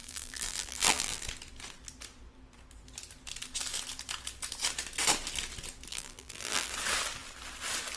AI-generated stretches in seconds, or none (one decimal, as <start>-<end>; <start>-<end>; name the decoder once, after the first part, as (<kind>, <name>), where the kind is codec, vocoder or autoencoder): 0.0-1.2 (vocoder, BigVGAN v2); 5.9-6.7